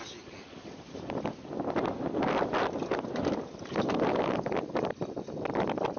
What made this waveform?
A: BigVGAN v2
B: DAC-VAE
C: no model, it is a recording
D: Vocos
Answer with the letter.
C